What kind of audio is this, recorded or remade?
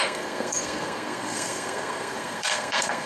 remade